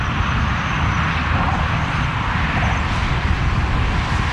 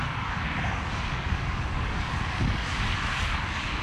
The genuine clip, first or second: first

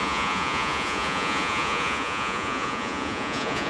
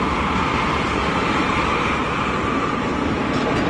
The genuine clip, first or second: second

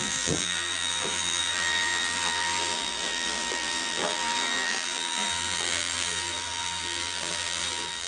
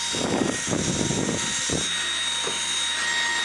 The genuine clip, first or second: second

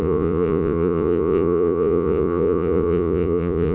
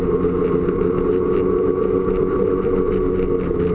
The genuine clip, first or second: second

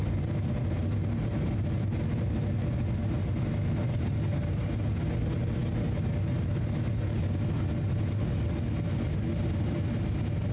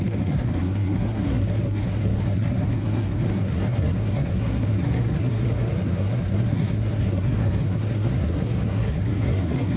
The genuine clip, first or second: first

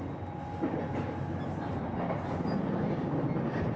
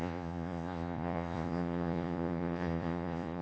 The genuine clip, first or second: first